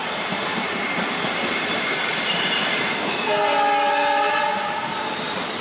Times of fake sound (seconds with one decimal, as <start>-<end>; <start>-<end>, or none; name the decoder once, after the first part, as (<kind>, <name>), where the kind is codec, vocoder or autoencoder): none